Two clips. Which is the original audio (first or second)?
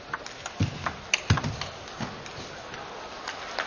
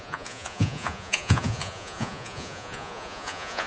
first